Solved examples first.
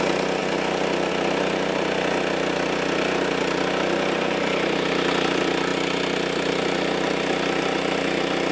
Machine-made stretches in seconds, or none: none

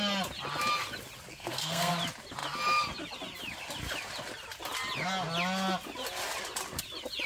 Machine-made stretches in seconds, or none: 1.3-1.9

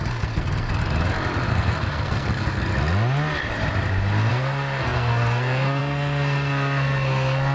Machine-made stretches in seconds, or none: 0.0-0.8; 1.5-2.7; 4.3-7.5

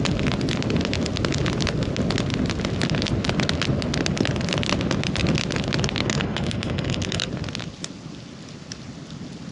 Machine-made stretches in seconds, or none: 6.0-7.3

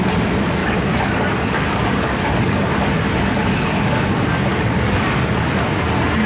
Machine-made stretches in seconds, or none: 0.6-2.7; 3.4-4.0; 4.5-5.6